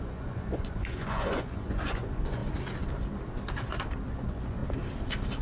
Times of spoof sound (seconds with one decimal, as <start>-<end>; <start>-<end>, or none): 0.0-2.4; 4.1-4.6